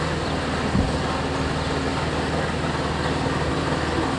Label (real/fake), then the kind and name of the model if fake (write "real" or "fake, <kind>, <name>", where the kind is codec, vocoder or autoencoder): real